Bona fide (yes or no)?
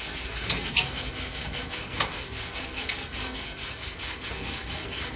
no